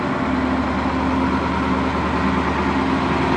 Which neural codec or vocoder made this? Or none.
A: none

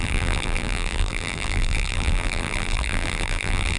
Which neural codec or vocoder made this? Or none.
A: vocoder, BigVGAN v2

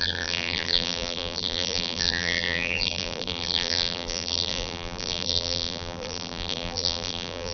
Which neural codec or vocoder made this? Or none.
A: vocoder, BigVGAN v2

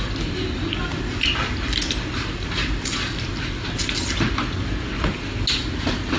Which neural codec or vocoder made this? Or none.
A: none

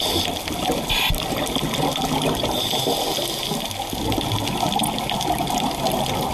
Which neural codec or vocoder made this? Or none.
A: none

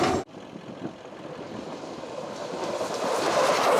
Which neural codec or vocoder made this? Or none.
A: none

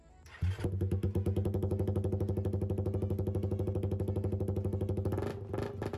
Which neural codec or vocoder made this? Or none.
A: none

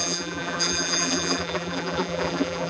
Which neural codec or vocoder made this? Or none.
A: vocoder, BigVGAN v2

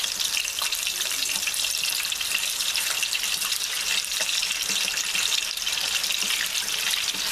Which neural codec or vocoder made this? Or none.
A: vocoder, BigVGAN v2